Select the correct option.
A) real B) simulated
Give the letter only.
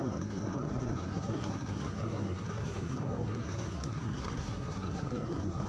B